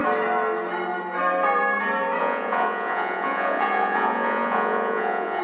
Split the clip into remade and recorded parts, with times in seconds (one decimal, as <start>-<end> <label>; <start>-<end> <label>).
0.0-2.2 recorded; 2.2-5.4 remade